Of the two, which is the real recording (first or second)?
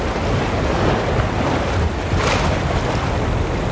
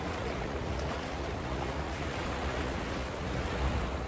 first